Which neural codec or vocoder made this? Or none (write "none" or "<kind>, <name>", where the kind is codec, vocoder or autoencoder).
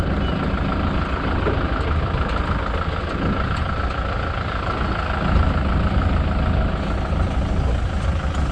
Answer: none